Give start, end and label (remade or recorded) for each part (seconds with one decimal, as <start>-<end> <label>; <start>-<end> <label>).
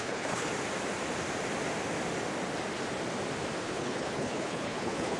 0.0-0.5 remade; 0.5-3.6 recorded; 3.6-5.2 remade